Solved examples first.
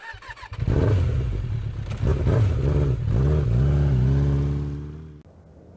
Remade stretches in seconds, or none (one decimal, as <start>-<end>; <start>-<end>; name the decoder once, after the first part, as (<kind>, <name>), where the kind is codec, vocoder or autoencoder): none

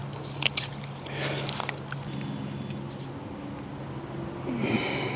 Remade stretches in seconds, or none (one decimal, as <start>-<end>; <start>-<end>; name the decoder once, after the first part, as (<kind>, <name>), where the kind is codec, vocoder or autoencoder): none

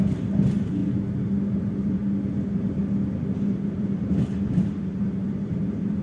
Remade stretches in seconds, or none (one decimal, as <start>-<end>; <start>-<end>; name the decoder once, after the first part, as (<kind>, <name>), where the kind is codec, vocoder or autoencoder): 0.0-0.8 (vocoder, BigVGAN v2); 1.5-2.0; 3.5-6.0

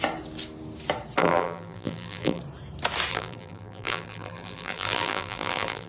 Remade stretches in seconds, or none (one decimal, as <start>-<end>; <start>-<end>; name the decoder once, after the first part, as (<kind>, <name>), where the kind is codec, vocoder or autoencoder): 1.2-2.4 (vocoder, BigVGAN v2); 3.1-5.9